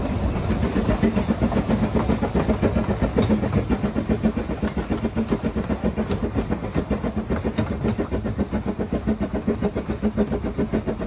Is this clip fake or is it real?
real